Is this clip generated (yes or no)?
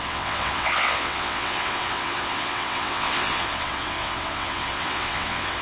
yes